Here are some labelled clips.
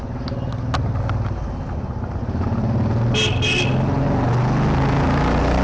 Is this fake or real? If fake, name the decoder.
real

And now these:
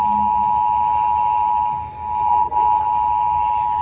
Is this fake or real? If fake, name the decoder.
real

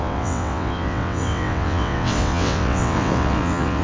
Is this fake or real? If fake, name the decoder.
fake, vocoder, WaveNeXt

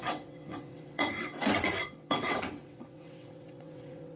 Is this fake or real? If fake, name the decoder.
fake, vocoder, WaveNeXt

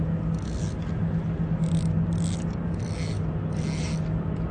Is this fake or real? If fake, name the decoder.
real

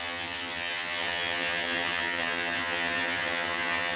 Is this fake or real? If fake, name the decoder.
fake, vocoder, HiFi-GAN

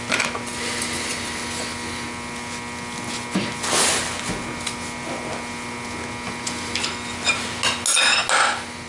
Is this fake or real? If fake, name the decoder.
real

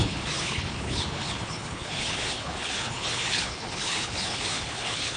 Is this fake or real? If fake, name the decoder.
fake, codec, HILCodec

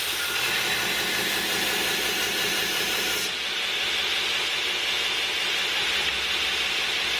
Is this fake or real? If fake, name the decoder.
real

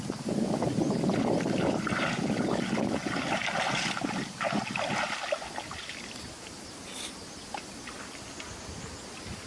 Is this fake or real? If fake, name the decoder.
real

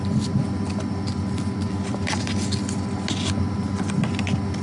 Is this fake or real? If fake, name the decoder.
real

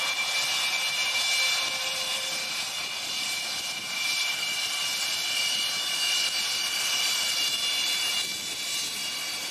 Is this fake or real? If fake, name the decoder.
real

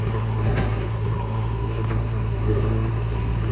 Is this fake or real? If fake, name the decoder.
fake, codec, SNAC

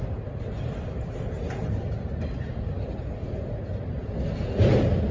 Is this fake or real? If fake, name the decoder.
real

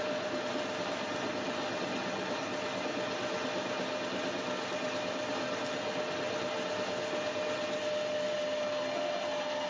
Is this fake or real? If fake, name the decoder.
real